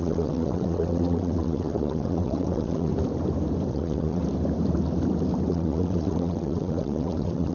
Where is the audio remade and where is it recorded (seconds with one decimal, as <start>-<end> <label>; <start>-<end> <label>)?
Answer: 0.0-2.9 remade; 2.9-3.7 recorded; 3.7-4.2 remade; 4.2-5.5 recorded; 5.5-7.5 remade